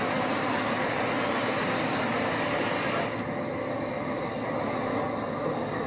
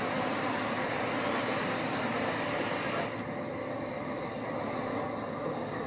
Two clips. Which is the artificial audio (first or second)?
second